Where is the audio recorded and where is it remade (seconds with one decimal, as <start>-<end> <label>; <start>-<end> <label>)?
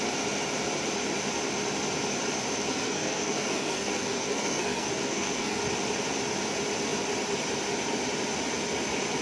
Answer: 0.0-2.7 recorded; 2.7-5.6 remade; 5.6-9.2 recorded